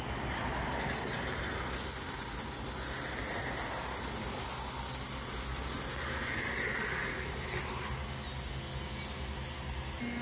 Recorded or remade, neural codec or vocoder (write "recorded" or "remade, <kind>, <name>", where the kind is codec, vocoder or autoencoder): recorded